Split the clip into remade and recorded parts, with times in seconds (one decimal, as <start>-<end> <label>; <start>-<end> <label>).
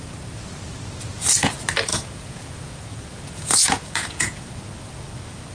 0.0-1.9 recorded; 1.9-4.5 remade; 4.5-5.5 recorded